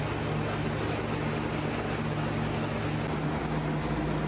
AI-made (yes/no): no